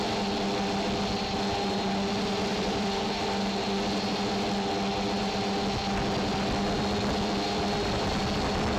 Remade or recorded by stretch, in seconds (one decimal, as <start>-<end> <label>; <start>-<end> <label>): 0.0-2.5 recorded; 2.5-3.1 remade; 3.1-8.8 recorded